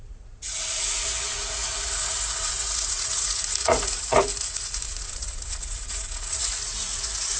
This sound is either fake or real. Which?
fake